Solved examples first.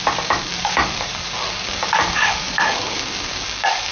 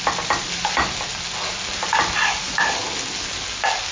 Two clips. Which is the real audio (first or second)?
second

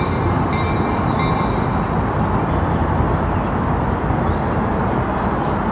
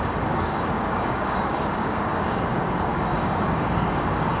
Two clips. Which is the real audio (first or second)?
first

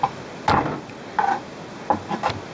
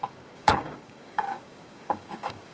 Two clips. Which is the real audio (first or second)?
first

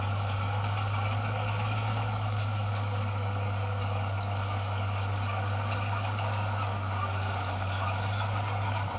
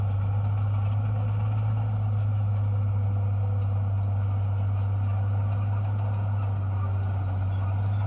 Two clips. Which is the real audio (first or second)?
second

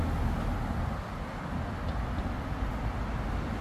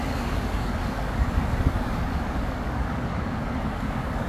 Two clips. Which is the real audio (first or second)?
first